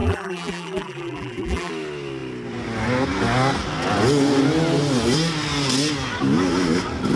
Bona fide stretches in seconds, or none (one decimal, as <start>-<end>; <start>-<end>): 1.7-7.2